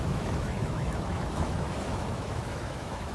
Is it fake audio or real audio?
fake